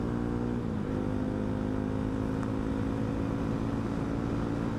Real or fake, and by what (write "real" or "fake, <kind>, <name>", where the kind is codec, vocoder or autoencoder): real